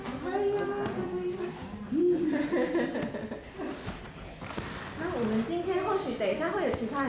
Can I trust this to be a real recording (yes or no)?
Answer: yes